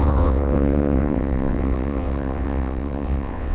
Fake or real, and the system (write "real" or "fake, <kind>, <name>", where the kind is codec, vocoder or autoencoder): fake, vocoder, WaveNeXt